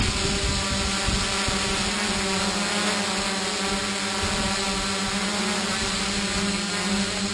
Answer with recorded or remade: recorded